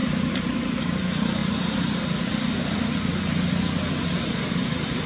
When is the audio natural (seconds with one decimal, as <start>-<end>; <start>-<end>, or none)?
0.0-0.5; 1.4-4.5